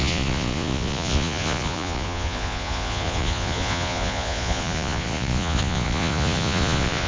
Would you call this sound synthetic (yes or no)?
yes